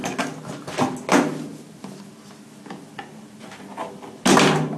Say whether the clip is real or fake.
real